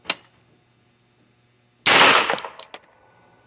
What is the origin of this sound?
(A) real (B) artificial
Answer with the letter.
A